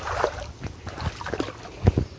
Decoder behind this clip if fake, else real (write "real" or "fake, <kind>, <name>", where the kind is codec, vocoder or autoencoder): real